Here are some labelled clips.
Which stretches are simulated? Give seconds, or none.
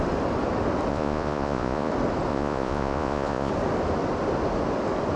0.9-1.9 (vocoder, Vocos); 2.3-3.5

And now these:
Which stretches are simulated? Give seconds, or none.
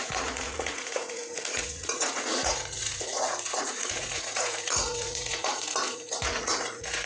0.0-7.1 (vocoder, Vocos)